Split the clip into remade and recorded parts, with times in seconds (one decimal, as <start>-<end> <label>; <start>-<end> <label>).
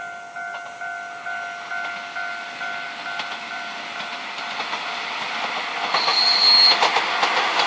0.0-7.7 recorded